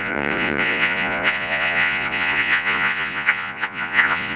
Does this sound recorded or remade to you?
remade